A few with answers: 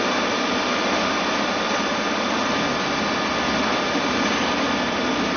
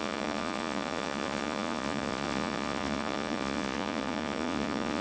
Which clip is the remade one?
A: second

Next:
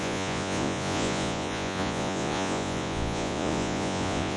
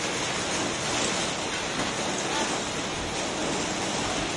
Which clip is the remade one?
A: first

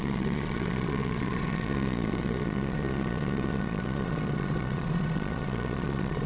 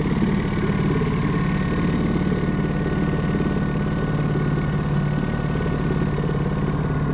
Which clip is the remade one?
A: first